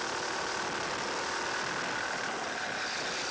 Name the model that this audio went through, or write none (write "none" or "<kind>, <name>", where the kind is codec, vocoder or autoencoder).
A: none